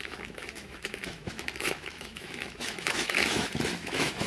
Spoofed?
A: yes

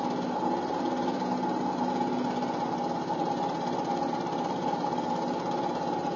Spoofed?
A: no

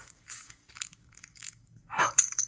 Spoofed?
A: yes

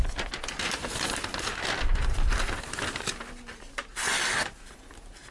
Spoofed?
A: no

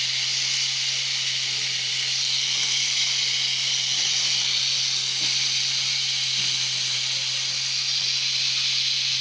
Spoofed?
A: no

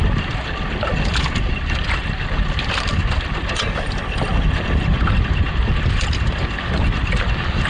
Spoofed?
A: no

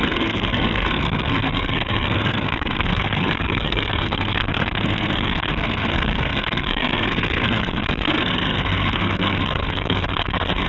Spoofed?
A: yes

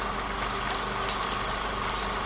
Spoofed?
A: no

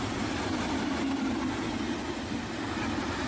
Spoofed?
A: no